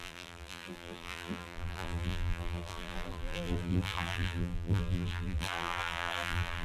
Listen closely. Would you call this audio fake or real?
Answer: fake